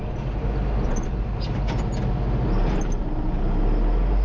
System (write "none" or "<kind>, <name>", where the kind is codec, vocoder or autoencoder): none